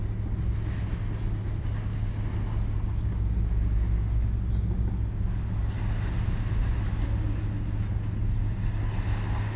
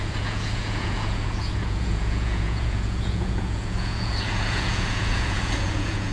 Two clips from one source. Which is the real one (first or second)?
first